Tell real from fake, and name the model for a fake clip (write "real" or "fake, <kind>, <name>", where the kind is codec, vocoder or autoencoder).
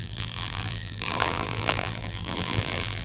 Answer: fake, vocoder, BigVGAN v2